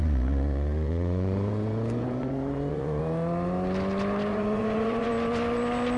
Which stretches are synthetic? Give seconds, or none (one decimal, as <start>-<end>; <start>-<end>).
0.0-3.0; 4.3-5.1

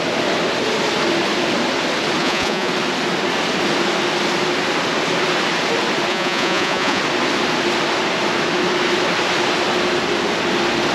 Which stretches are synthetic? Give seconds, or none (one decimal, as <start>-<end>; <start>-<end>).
2.2-2.7; 6.1-7.0

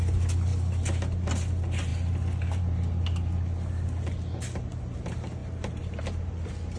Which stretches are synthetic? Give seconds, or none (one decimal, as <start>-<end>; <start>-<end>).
none

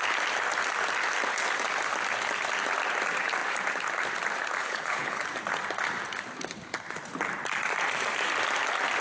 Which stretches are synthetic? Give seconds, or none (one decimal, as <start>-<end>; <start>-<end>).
4.6-5.2

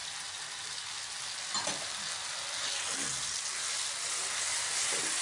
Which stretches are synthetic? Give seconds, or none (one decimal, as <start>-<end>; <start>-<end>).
none